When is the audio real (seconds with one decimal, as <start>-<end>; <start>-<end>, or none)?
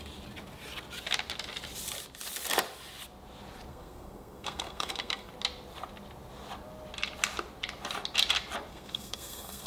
0.0-3.7; 5.3-8.7